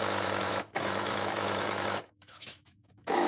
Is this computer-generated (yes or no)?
yes